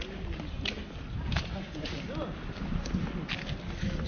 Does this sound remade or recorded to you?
recorded